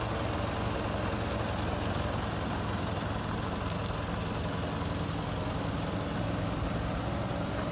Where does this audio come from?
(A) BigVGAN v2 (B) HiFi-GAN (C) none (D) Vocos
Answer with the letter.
C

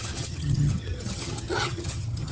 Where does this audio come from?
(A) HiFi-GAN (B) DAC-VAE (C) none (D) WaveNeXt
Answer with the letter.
A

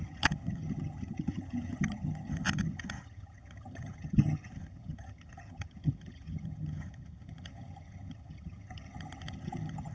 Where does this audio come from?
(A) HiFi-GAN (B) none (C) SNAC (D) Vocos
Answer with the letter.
A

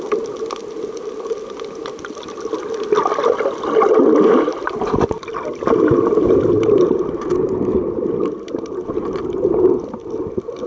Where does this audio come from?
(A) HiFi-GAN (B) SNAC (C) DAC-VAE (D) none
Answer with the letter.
D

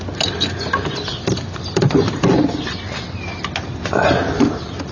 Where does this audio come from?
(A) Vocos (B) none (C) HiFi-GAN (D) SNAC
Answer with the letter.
B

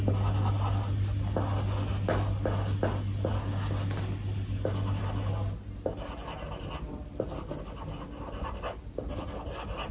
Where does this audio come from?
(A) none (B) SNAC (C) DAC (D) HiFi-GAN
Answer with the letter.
A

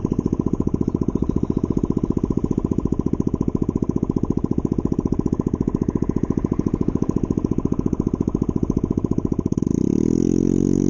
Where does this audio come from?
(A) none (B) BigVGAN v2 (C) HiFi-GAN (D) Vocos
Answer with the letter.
A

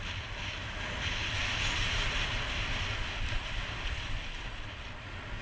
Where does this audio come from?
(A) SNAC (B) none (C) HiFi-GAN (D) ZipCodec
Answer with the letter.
B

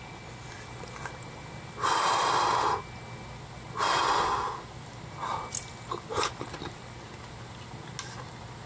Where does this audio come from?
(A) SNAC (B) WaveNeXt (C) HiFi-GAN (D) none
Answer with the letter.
D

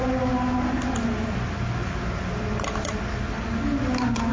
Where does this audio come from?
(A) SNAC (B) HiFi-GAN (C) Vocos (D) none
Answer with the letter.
D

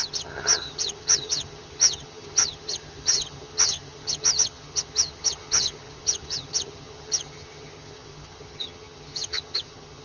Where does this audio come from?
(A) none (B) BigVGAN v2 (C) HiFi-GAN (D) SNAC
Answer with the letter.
C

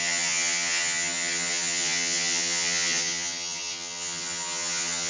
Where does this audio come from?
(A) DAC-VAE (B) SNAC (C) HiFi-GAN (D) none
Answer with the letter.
C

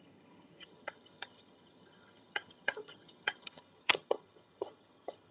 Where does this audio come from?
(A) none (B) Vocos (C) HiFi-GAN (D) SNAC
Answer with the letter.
C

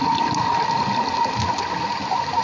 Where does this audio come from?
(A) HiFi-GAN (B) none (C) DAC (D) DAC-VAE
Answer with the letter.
B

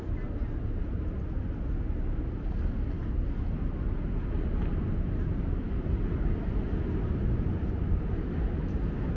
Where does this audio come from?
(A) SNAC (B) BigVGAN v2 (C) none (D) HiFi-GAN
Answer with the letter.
C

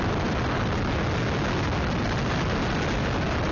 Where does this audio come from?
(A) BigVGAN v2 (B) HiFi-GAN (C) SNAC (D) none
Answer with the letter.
D